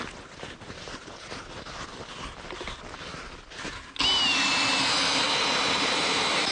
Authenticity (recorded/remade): recorded